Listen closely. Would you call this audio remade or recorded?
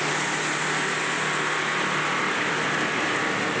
recorded